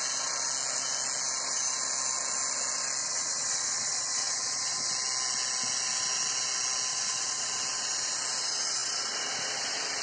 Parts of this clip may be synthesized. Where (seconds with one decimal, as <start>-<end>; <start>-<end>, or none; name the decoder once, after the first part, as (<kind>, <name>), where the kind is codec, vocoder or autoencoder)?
3.0-4.9 (vocoder, WaveNeXt); 6.9-7.5